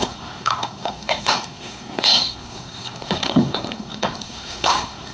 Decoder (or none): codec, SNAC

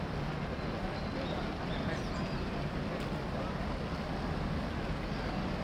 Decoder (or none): none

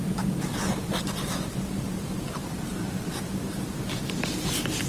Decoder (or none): none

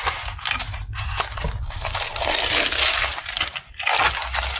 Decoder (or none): none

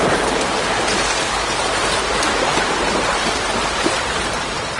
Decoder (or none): vocoder, BigVGAN v2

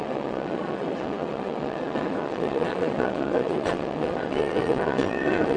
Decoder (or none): vocoder, WaveNeXt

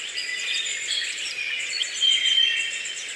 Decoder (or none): vocoder, Vocos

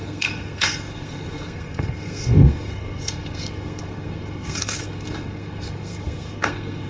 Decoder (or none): codec, SNAC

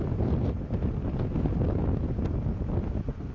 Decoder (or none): none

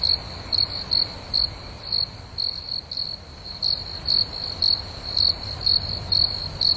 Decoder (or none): none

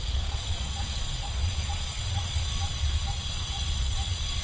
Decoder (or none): vocoder, Vocos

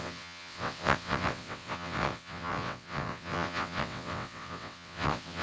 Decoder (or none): vocoder, WaveNeXt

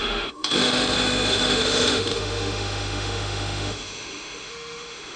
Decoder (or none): autoencoder, DAC-VAE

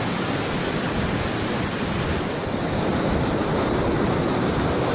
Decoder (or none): none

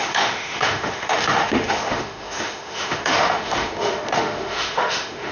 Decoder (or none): autoencoder, DAC-VAE